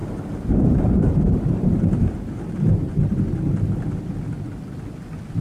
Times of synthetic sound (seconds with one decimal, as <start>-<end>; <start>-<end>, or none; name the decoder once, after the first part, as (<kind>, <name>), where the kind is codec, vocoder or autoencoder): 0.0-3.2 (vocoder, BigVGAN v2)